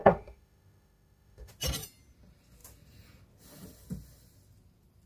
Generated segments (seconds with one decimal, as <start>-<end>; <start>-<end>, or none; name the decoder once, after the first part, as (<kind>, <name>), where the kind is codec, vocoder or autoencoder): 0.0-1.5 (autoencoder, DAC-VAE)